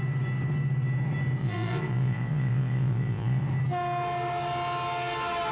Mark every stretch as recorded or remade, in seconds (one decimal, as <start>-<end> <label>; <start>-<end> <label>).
0.0-1.4 recorded; 1.4-3.4 remade; 3.4-5.5 recorded